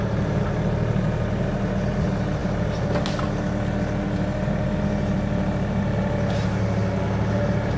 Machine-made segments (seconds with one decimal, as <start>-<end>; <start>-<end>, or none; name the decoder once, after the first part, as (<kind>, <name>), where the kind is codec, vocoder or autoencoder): none